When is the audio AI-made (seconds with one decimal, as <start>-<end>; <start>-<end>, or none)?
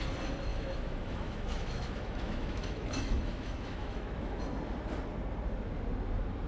0.5-4.4